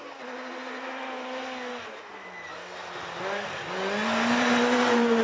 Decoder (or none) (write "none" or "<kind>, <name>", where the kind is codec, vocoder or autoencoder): none